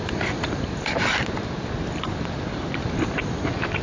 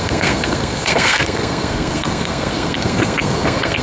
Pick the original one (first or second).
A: first